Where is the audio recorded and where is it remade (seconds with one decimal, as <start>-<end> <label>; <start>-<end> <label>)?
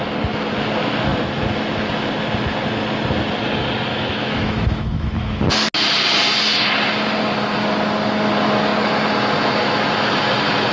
0.0-3.9 recorded; 3.9-5.4 remade; 5.4-10.7 recorded